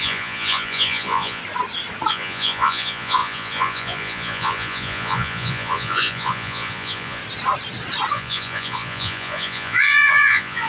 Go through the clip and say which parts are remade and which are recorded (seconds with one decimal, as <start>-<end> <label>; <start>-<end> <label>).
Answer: 0.0-1.4 remade; 1.4-2.1 recorded; 2.1-7.2 remade; 7.2-8.1 recorded; 8.1-10.7 remade